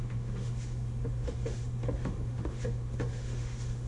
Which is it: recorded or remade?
remade